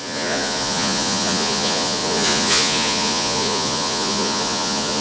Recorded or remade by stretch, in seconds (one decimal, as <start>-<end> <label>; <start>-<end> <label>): 0.0-5.0 remade